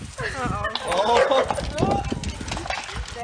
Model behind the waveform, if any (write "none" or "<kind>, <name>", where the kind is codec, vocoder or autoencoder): none